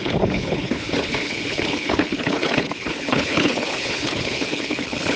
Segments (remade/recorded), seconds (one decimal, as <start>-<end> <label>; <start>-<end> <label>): 0.0-5.2 remade